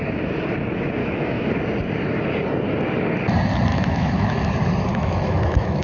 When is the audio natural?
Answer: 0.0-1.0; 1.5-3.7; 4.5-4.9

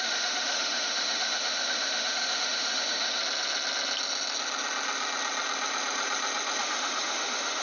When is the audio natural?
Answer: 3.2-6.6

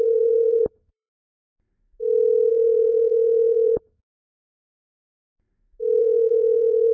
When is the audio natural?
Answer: 1.1-2.5; 5.3-6.0